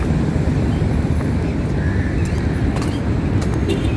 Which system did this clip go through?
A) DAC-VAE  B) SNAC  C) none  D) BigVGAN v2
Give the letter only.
C